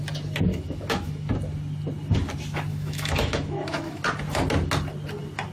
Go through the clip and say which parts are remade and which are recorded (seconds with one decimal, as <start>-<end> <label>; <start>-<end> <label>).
0.0-0.5 recorded; 0.5-1.3 remade; 1.3-2.7 recorded; 2.7-4.0 remade; 4.0-5.5 recorded